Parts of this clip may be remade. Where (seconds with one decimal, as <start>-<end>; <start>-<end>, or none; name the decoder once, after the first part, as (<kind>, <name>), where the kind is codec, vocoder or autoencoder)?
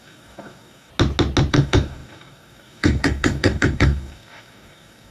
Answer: 0.0-0.9 (codec, DAC); 1.5-5.1